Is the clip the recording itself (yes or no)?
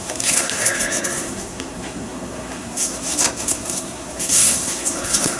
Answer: no